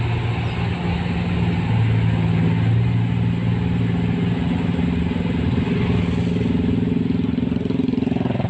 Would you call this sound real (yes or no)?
yes